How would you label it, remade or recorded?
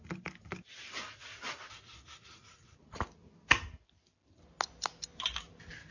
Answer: recorded